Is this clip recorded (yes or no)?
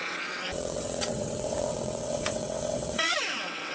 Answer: no